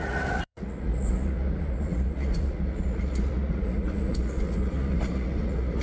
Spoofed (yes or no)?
yes